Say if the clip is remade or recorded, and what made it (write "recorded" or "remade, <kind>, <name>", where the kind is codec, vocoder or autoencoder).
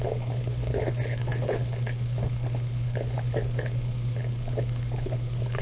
remade, codec, HILCodec